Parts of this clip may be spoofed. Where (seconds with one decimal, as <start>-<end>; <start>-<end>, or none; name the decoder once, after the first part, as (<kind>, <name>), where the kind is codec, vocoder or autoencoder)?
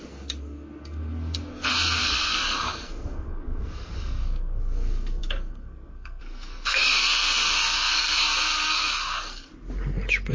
0.0-9.5 (codec, SNAC)